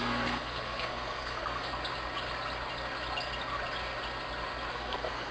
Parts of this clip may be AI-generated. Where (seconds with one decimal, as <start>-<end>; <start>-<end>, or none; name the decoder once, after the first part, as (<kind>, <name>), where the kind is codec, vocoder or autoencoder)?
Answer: 0.0-1.7 (codec, SNAC); 4.7-5.3